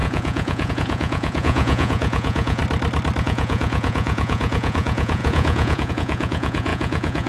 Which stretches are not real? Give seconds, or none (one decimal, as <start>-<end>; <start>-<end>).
0.0-2.6; 3.2-7.3

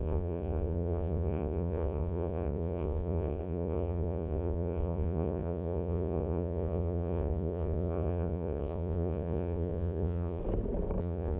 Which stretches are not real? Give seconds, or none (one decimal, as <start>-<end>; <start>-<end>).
0.0-10.4; 11.0-11.4

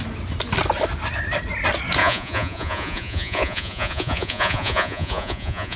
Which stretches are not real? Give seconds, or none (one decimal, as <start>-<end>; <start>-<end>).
2.0-5.8

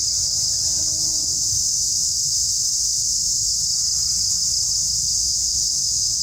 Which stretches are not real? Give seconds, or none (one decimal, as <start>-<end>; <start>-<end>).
1.5-3.5; 5.2-6.2

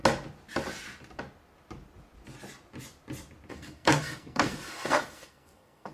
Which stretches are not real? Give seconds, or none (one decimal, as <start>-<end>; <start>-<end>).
3.5-5.9

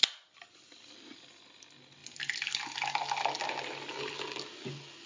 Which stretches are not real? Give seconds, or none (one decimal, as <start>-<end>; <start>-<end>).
none

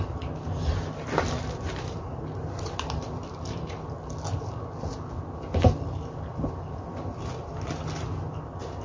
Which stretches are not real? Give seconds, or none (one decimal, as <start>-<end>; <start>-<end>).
none

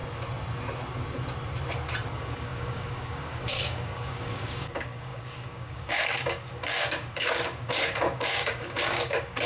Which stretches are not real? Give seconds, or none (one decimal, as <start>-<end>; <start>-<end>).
2.1-9.5